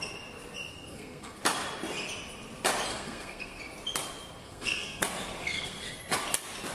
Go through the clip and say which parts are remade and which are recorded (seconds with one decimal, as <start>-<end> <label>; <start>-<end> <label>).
0.0-0.7 recorded; 0.7-1.4 remade; 1.4-2.9 recorded; 2.9-3.6 remade; 3.6-4.4 recorded; 4.4-5.0 remade; 5.0-5.4 recorded; 5.4-6.0 remade; 6.0-6.7 recorded